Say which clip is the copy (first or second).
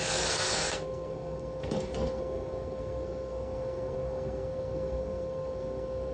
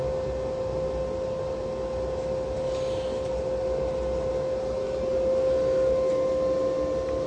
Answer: first